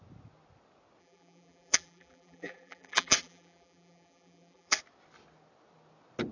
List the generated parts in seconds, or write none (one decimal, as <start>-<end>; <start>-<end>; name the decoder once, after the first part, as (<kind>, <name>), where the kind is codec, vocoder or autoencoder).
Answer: 1.0-4.8 (vocoder, BigVGAN v2)